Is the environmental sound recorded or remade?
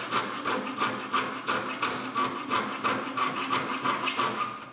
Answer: recorded